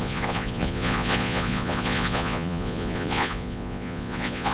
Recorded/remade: remade